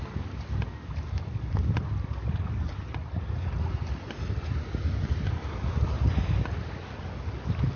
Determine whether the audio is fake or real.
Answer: real